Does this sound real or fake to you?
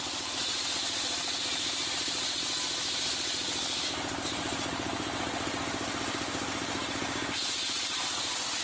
real